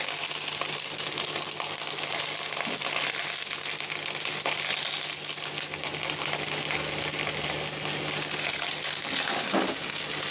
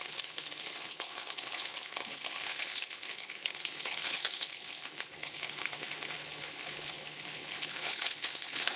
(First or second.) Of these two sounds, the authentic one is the first